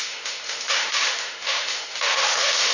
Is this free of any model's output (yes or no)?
no